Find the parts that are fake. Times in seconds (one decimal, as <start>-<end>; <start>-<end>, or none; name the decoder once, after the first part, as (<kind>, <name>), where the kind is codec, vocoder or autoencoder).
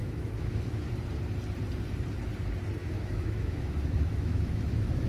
0.0-0.9 (autoencoder, DAC-VAE); 2.8-5.1